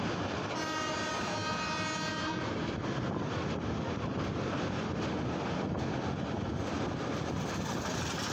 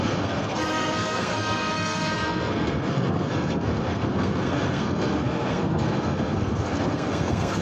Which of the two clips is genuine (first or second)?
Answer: first